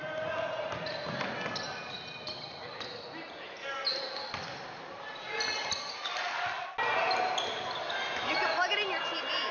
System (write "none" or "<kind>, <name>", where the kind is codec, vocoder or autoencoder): none